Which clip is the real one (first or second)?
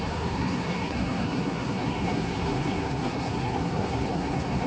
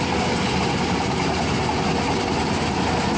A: second